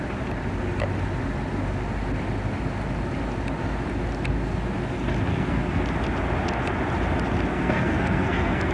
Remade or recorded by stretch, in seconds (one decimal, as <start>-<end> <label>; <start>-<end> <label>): 0.0-5.3 recorded; 5.3-5.8 remade; 5.8-7.5 recorded; 7.5-8.7 remade